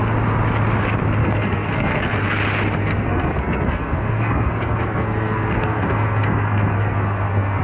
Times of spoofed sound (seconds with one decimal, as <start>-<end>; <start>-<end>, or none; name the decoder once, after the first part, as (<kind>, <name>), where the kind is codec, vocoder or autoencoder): 1.2-2.2 (codec, SNAC); 2.8-7.6